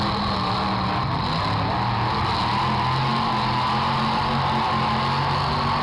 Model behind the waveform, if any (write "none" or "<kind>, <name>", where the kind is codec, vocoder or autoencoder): none